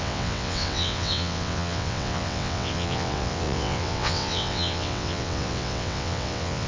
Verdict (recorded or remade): remade